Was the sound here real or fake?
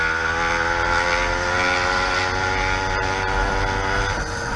real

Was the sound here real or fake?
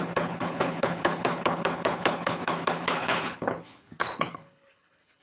fake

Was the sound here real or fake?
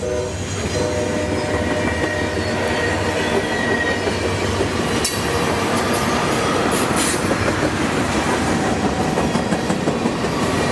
real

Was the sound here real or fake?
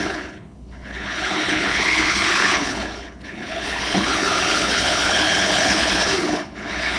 fake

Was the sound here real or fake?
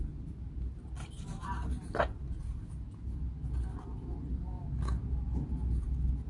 real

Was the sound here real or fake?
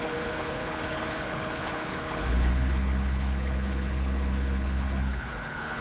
fake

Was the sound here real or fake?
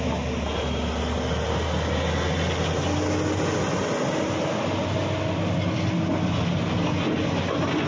real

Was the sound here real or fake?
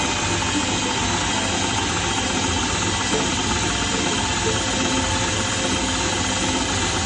real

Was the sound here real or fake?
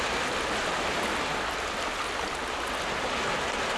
real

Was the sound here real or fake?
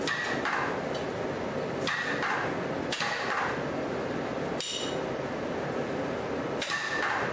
real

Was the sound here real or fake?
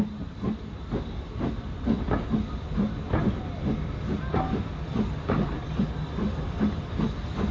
real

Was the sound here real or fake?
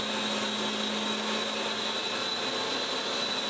real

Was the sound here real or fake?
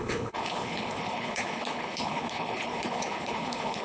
fake